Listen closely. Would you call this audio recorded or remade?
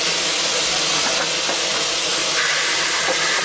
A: recorded